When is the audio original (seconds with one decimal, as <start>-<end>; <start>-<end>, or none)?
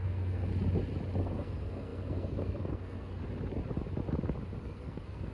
0.5-1.2; 3.2-4.6